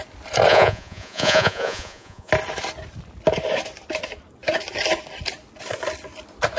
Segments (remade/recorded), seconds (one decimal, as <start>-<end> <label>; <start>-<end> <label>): 0.0-0.5 recorded; 0.5-2.3 remade; 2.3-6.6 recorded